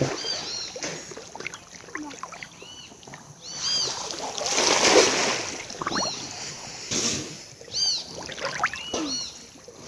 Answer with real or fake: real